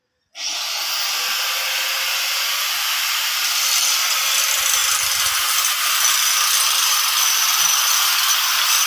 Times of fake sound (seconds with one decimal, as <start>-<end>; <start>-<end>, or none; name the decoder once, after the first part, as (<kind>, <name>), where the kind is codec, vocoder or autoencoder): none